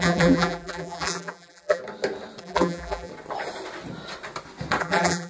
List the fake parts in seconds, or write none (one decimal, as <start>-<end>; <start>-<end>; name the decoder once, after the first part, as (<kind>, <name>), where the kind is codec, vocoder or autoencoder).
0.0-1.8 (vocoder, BigVGAN v2); 2.4-3.1; 4.8-5.3